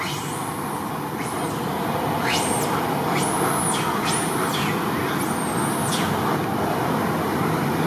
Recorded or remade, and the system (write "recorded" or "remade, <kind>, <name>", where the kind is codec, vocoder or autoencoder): recorded